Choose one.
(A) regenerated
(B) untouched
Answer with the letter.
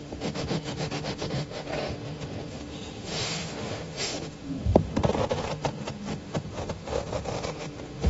A